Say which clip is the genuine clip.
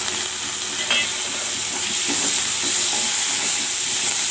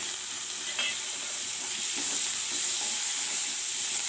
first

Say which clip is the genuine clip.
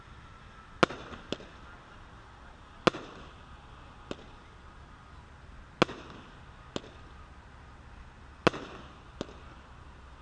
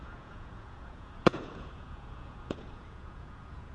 first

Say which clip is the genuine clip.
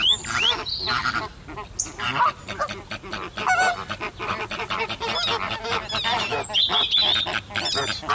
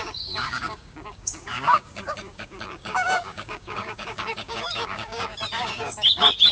first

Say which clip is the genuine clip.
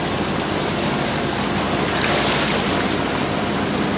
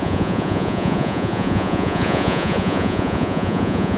first